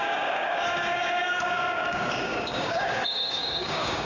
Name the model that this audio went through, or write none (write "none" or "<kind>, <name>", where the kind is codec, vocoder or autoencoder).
codec, DAC